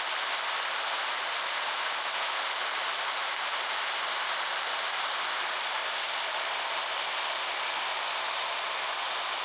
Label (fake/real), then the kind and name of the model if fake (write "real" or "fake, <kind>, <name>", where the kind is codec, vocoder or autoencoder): real